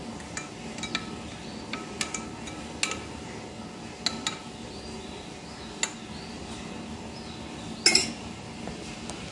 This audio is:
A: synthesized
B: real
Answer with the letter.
B